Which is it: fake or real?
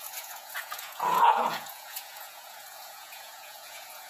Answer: fake